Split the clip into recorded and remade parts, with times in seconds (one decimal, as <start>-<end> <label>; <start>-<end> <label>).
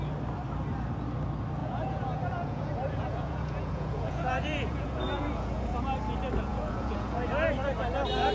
0.0-1.6 recorded; 1.6-5.8 remade; 5.8-6.5 recorded; 6.5-7.3 remade; 7.3-8.3 recorded